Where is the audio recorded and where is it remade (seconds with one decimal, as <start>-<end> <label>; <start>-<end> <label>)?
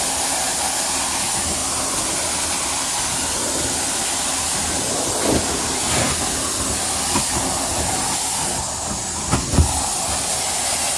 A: 0.0-11.0 recorded